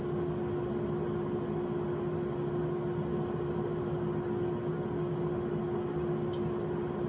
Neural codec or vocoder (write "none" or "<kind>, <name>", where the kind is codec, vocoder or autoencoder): none